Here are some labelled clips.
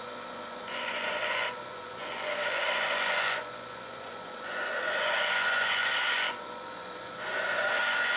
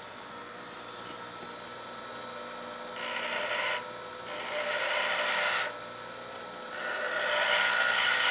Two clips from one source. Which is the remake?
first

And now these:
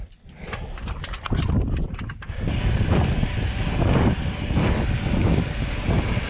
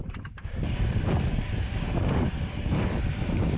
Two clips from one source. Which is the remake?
second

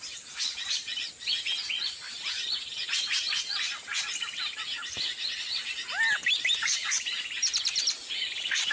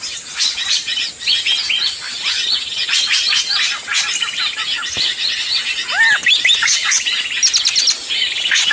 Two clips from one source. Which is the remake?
first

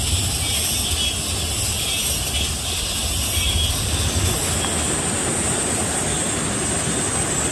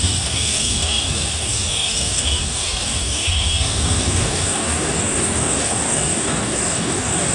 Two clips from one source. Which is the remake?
second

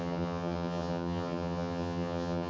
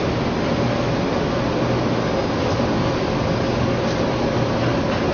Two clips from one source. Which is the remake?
first